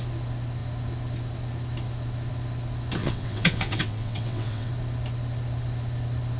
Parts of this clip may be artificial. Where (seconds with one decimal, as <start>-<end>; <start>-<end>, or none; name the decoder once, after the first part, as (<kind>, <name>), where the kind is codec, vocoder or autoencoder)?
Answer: 3.0-4.7 (vocoder, WaveNeXt)